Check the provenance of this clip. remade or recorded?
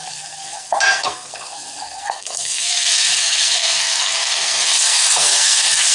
remade